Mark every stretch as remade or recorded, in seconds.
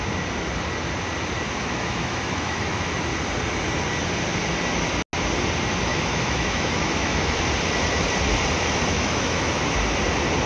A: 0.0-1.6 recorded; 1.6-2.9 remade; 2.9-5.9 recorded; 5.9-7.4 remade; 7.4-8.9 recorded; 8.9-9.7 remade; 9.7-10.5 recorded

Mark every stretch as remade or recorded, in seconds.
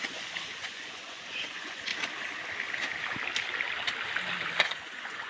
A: 0.0-1.9 remade; 1.9-4.6 recorded; 4.6-5.3 remade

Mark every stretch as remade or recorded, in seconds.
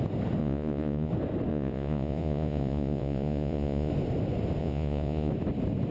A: 0.0-0.4 recorded; 0.4-1.1 remade; 1.1-1.5 recorded; 1.5-3.9 remade; 3.9-4.6 recorded; 4.6-5.3 remade; 5.3-5.9 recorded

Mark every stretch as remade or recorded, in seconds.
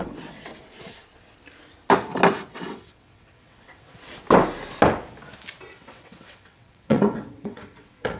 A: 0.0-0.5 remade; 0.5-2.5 recorded; 2.5-4.1 remade; 4.1-5.7 recorded; 5.7-8.2 remade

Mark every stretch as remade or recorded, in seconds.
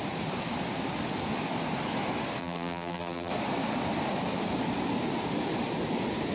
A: 0.0-2.4 recorded; 2.4-3.3 remade; 3.3-6.3 recorded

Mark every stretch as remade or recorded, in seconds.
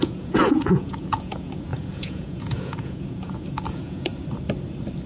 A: 0.0-4.1 remade; 4.1-5.1 recorded